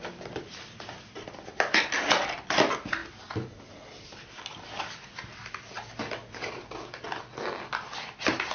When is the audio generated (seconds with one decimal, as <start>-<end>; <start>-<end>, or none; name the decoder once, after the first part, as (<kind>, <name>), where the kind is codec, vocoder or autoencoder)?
none